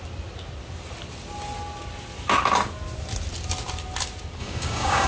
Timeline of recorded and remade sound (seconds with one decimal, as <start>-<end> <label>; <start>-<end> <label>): 0.0-4.4 recorded; 4.4-5.1 remade